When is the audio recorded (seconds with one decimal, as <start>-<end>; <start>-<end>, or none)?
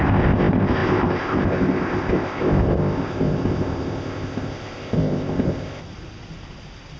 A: 5.8-7.0